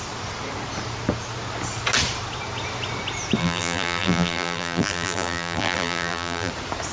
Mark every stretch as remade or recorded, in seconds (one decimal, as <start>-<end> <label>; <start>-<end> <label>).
0.0-3.4 recorded; 3.4-6.5 remade; 6.5-6.9 recorded